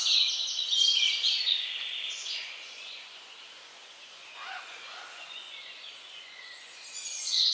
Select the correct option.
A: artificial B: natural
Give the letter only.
A